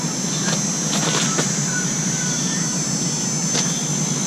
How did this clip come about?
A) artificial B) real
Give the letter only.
B